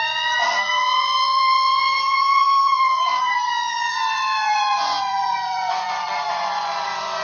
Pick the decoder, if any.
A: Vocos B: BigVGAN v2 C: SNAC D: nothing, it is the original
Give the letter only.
A